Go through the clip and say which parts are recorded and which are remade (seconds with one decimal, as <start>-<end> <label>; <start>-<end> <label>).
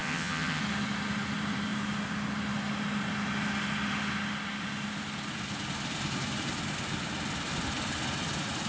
0.0-0.6 remade; 0.6-8.7 recorded